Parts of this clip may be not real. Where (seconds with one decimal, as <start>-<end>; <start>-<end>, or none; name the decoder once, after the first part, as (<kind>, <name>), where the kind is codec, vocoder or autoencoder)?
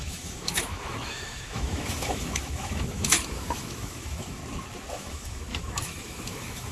0.0-4.4 (autoencoder, DAC-VAE); 4.9-6.7